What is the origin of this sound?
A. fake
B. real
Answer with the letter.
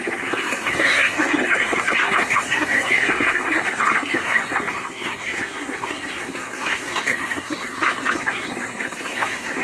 A